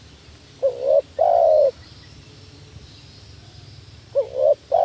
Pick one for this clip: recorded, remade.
recorded